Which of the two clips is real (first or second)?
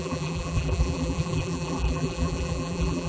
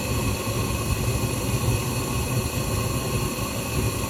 second